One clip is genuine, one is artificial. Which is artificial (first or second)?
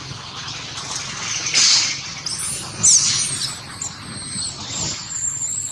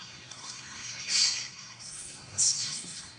second